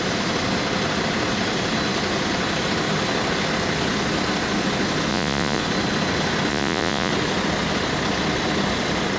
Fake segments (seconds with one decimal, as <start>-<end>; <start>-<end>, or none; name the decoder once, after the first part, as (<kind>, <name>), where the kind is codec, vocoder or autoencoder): 5.1-5.6 (vocoder, Vocos); 6.5-7.1